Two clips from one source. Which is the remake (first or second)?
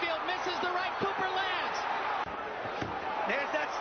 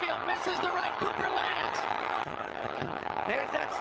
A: second